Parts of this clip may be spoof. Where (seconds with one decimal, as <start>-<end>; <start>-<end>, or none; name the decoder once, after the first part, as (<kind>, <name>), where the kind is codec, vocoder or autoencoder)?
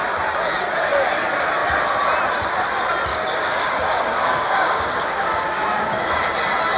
3.1-6.3 (codec, DAC)